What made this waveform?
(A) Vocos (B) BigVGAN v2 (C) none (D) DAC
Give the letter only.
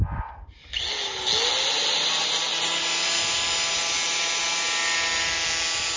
C